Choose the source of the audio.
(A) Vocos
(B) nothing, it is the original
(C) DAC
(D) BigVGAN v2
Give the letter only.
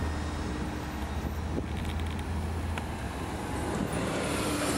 B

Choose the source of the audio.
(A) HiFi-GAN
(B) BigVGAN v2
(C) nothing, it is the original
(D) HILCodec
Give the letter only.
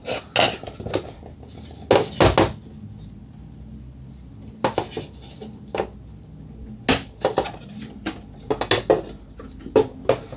C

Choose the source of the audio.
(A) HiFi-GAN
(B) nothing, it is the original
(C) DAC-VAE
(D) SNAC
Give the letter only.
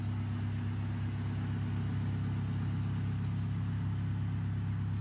B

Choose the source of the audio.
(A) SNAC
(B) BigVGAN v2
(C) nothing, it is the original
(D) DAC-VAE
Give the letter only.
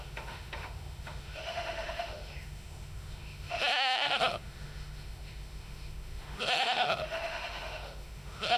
D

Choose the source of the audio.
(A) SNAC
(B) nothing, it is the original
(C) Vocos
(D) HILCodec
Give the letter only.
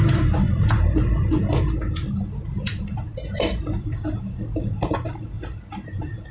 B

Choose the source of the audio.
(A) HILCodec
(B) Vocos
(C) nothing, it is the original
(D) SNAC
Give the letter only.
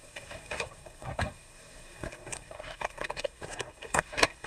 D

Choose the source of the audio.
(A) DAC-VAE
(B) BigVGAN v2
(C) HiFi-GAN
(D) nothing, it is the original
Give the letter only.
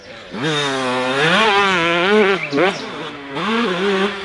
D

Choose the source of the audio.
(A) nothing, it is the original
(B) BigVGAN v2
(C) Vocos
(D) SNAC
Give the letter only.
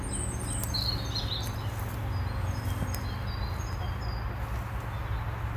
A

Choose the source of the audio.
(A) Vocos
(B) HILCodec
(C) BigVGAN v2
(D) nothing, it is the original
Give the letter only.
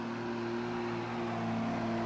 D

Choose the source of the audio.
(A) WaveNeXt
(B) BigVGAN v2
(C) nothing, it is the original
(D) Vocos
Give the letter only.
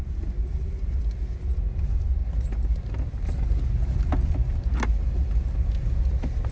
C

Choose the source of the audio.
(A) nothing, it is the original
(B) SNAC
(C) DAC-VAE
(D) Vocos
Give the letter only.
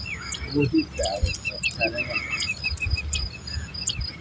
A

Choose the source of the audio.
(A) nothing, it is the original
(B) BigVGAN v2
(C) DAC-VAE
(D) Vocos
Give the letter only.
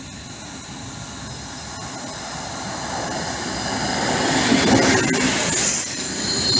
A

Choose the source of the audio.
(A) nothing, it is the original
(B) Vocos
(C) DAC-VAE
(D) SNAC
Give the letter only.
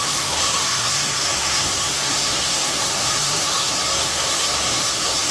D